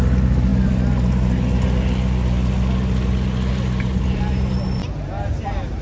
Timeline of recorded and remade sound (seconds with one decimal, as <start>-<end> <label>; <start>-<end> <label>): 0.0-4.8 recorded; 4.8-5.8 remade